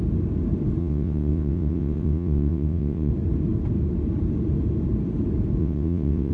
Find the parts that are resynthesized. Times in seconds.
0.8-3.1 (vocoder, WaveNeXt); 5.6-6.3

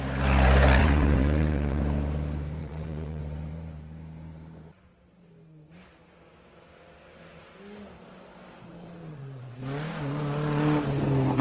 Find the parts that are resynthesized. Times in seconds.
0.8-1.8 (vocoder, WaveNeXt); 2.6-3.2; 9.0-9.6

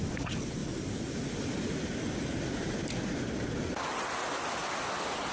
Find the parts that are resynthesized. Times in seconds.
none

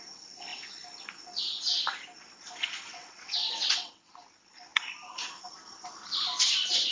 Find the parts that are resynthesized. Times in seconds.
2.9-4.1 (vocoder, WaveNeXt)

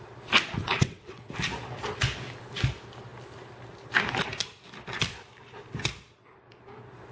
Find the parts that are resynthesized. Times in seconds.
0.6-1.3 (vocoder, WaveNeXt)

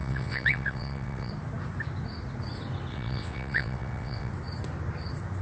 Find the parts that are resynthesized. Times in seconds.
0.0-1.3 (vocoder, WaveNeXt); 2.9-4.3

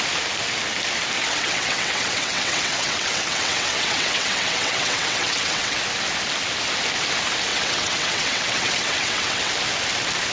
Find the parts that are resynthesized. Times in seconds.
1.2-5.8 (vocoder, WaveNeXt); 7.5-9.5